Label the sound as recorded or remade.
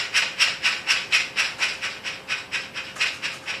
recorded